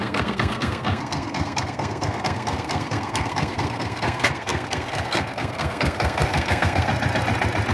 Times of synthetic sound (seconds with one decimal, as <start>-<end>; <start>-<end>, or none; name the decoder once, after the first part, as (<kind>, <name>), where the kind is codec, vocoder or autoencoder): 0.0-6.9 (codec, SNAC)